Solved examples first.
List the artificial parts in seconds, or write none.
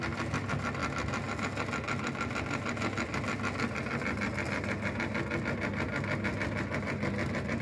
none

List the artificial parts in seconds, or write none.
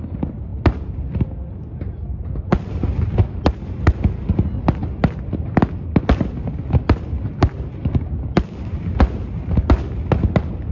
0.5-1.0 (vocoder, BigVGAN v2)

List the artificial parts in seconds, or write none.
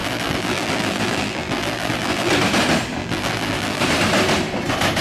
0.0-2.3 (vocoder, BigVGAN v2); 3.0-3.8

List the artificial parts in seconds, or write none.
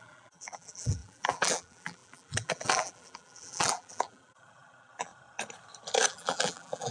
0.0-5.1 (vocoder, BigVGAN v2); 6.1-6.9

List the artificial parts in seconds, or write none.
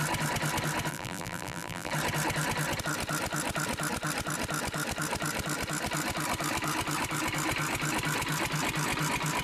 0.9-1.9 (vocoder, BigVGAN v2)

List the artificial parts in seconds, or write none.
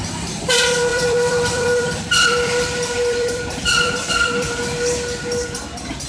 0.9-4.6 (vocoder, BigVGAN v2)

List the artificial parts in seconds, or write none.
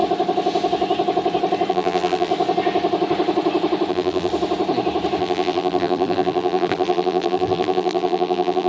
1.7-2.3 (vocoder, BigVGAN v2); 3.9-4.3; 5.2-8.7